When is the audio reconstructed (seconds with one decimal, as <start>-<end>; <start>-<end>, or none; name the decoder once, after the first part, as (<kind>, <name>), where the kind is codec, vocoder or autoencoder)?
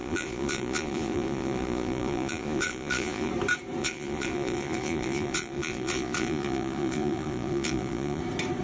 0.0-3.3 (vocoder, Vocos); 3.8-8.2